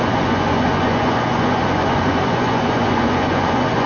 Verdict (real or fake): fake